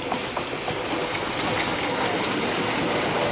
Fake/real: real